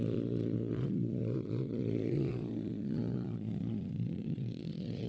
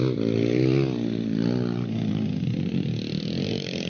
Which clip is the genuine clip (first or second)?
second